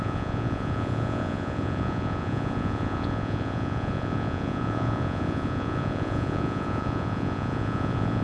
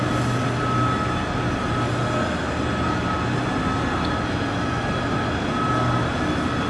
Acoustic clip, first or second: second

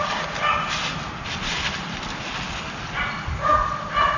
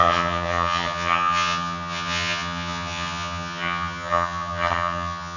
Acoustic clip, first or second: first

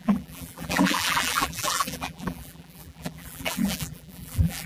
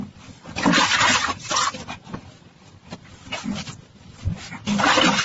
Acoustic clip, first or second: second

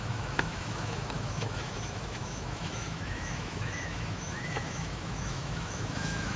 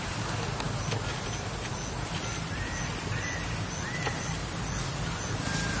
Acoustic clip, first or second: second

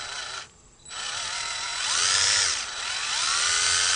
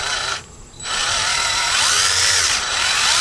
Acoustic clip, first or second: first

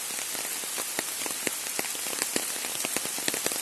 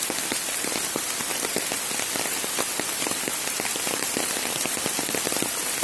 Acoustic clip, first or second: first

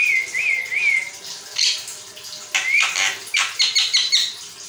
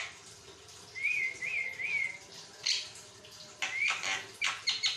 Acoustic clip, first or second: first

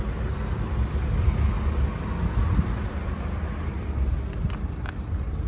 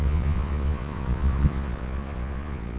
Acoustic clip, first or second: first